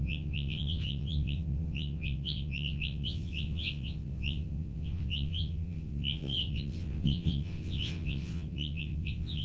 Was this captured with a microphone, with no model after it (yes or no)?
no